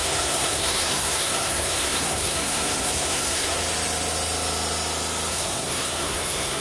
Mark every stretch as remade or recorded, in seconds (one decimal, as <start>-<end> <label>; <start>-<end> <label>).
0.0-3.6 remade; 3.6-5.3 recorded; 5.3-6.6 remade